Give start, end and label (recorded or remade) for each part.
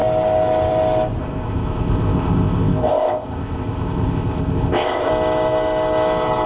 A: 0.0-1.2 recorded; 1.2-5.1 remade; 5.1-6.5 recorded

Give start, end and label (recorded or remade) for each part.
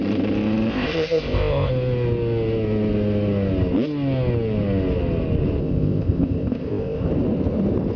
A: 0.0-0.7 recorded; 0.7-1.7 remade; 1.7-5.6 recorded; 5.6-7.1 remade; 7.1-8.0 recorded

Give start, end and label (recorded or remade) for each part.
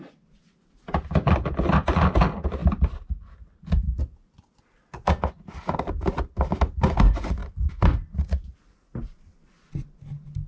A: 0.0-10.5 recorded